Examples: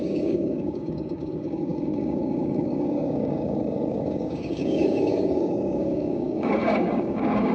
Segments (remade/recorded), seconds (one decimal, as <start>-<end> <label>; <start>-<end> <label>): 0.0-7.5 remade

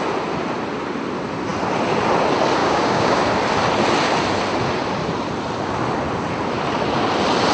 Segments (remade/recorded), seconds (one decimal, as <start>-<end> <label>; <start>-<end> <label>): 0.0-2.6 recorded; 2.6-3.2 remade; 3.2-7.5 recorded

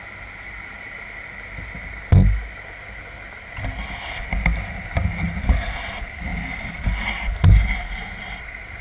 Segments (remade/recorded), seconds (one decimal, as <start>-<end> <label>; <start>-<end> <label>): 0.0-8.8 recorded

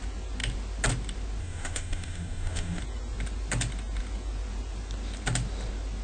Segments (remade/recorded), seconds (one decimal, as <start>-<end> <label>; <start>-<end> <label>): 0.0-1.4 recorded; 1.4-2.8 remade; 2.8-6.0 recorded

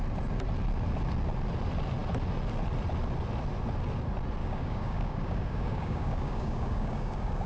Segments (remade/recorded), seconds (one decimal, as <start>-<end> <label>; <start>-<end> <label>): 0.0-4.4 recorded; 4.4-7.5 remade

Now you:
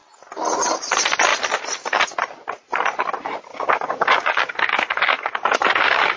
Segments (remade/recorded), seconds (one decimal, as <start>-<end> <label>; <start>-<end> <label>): 0.0-3.5 recorded; 3.5-6.2 remade

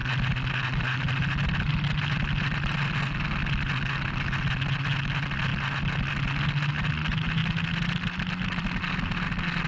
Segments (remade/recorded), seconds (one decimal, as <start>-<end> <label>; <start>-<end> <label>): 0.0-9.7 recorded